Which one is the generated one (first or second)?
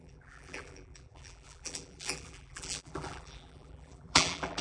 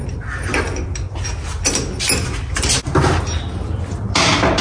first